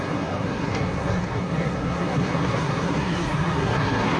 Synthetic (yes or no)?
yes